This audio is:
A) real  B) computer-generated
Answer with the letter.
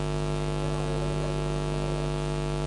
A